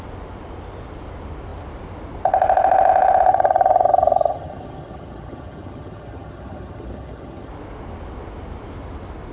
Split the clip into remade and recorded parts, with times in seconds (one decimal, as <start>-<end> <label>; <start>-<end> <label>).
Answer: 0.0-3.3 recorded; 3.3-7.5 remade; 7.5-9.3 recorded